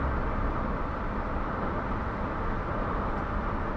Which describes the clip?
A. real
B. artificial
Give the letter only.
A